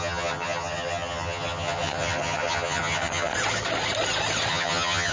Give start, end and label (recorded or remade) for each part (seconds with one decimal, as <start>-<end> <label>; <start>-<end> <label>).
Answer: 0.0-3.3 remade; 3.3-4.5 recorded; 4.5-5.1 remade